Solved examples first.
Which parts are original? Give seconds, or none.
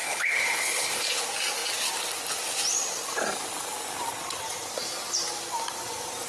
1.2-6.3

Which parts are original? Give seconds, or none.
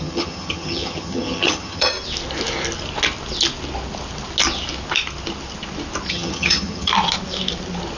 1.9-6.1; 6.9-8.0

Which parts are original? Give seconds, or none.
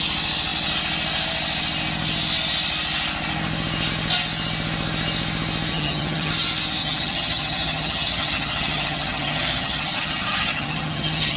0.0-5.7; 6.3-6.8